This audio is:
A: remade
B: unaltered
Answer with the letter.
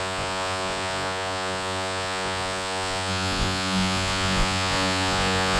A